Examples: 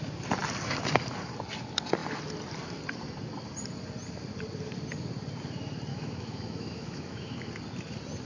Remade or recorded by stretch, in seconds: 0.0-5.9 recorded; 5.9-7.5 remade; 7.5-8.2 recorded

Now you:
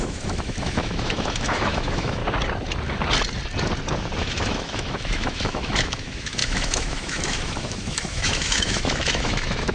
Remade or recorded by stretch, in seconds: 0.0-2.2 remade; 2.2-4.2 recorded; 4.2-9.7 remade

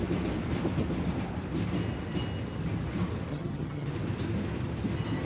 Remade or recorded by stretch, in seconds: 0.0-3.3 recorded; 3.3-3.9 remade; 3.9-5.3 recorded

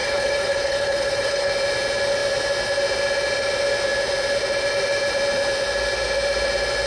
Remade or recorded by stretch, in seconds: 0.0-1.5 remade; 1.5-6.9 recorded

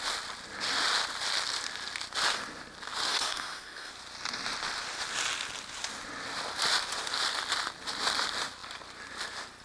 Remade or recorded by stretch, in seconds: 0.0-3.1 recorded; 3.1-3.9 remade; 3.9-9.6 recorded

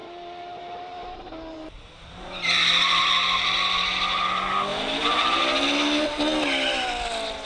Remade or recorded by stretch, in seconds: 0.0-3.0 remade; 3.0-4.7 recorded; 4.7-5.4 remade; 5.4-7.4 recorded

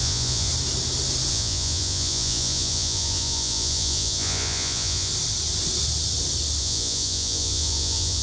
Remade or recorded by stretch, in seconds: 0.0-0.5 remade; 0.5-1.3 recorded; 1.3-5.1 remade; 5.1-6.6 recorded; 6.6-8.2 remade

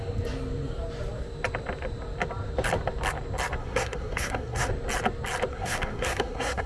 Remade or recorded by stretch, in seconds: 0.0-3.6 recorded; 3.6-4.7 remade; 4.7-5.5 recorded; 5.5-6.7 remade